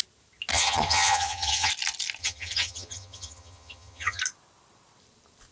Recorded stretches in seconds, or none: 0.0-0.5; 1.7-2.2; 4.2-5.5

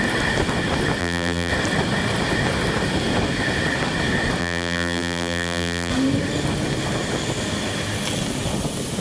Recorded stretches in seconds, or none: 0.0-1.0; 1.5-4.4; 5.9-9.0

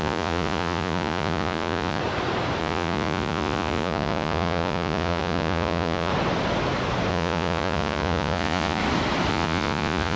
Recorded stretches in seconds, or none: 2.0-2.6; 6.1-7.1; 8.8-9.3

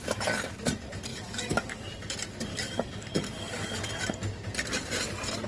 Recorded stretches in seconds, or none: 0.0-1.1; 1.9-2.5; 3.8-5.5

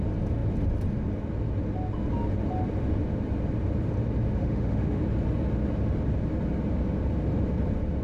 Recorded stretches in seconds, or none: 0.0-4.4; 5.0-8.0